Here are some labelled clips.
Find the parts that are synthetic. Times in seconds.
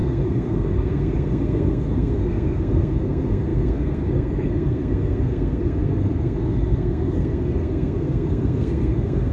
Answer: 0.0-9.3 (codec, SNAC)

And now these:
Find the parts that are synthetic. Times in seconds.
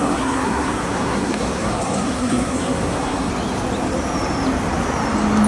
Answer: 0.0-3.3 (codec, SNAC)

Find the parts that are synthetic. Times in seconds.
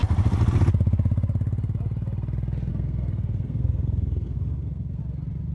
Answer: 2.7-5.0 (codec, SNAC)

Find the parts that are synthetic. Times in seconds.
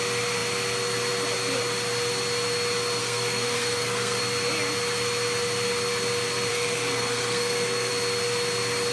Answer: 3.0-4.2 (codec, SNAC); 6.5-7.9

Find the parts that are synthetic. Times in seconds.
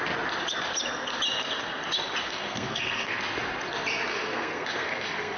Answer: 2.2-3.2 (codec, SNAC); 4.1-5.4